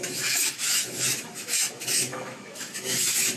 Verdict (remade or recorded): remade